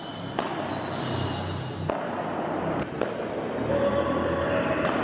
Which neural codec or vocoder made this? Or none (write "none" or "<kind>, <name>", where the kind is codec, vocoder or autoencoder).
none